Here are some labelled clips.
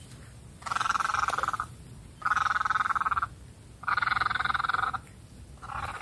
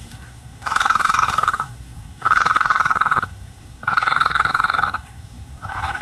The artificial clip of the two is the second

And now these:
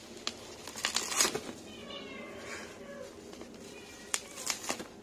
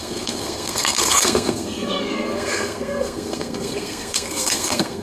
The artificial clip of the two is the second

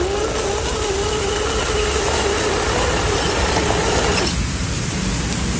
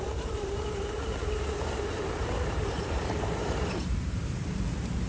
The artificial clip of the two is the second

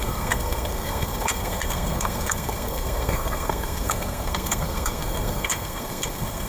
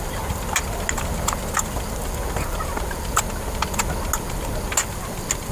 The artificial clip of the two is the first